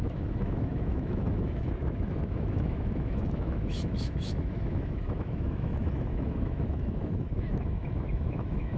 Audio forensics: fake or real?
fake